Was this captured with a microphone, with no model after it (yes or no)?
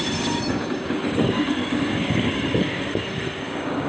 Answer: no